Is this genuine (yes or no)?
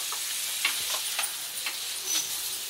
yes